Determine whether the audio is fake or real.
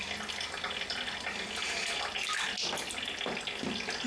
real